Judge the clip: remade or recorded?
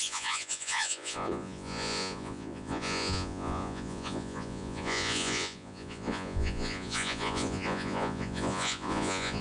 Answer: remade